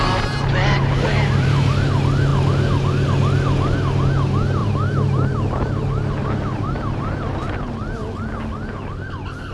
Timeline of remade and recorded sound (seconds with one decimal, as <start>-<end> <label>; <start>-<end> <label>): 0.0-1.1 recorded; 1.1-1.7 remade; 1.7-4.6 recorded; 4.6-6.1 remade; 6.1-9.5 recorded